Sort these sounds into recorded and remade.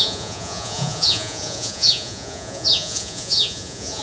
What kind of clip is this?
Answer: remade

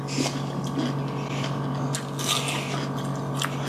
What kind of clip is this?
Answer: recorded